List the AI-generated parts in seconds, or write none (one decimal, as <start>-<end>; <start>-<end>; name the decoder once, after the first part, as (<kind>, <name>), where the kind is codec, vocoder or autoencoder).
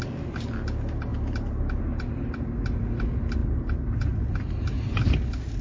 none